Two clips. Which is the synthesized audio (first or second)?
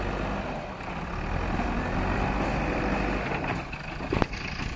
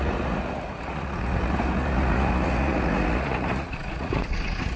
second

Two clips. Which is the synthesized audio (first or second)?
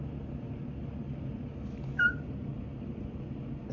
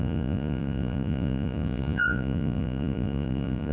second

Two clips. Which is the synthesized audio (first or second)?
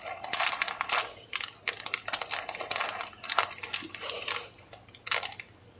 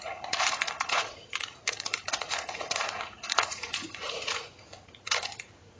second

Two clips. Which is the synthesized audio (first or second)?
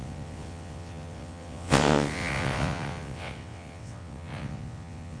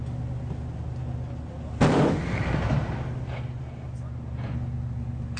first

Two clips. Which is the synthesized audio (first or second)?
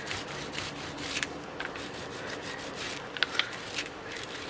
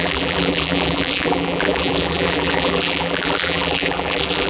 second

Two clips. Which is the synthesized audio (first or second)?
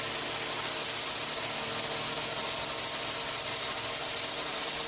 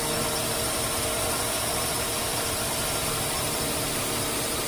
second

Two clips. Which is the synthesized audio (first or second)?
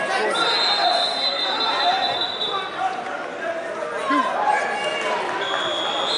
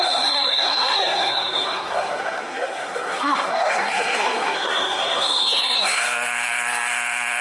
second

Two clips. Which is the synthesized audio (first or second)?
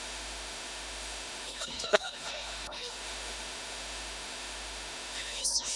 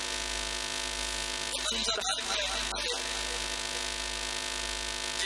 first